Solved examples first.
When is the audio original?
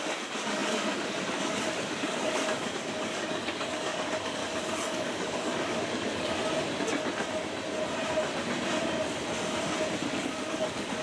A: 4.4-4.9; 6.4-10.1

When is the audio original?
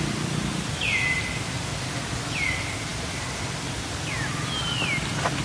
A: 0.0-5.4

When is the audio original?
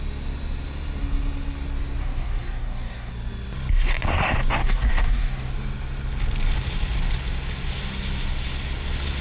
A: 0.0-2.0; 3.1-4.6; 5.5-9.2